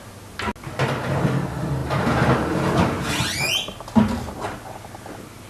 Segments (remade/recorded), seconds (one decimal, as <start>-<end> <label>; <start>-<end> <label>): 0.0-5.5 recorded